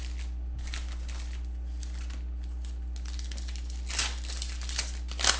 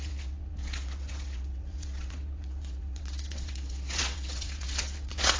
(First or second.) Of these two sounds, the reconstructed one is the second